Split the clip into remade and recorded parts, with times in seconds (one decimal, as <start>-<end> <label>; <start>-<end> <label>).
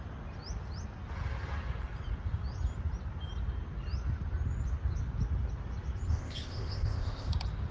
0.0-6.1 recorded; 6.1-7.3 remade; 7.3-7.7 recorded